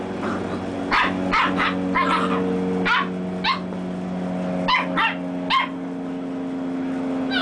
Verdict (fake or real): real